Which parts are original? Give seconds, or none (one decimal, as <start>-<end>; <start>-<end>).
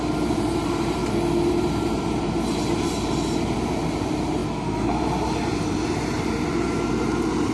1.0-1.5; 4.4-5.0